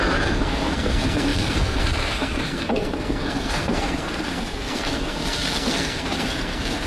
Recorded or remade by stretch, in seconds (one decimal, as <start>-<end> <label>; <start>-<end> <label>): 0.0-6.9 remade